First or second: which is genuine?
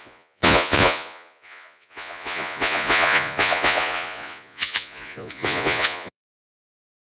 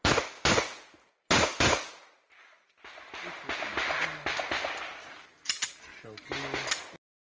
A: second